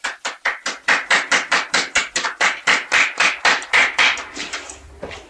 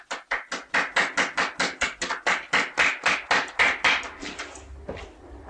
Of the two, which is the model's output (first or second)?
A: first